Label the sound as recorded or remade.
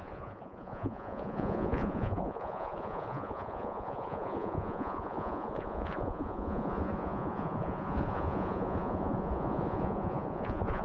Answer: remade